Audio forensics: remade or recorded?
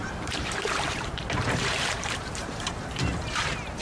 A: remade